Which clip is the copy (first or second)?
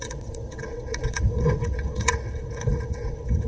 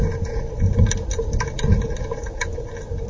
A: first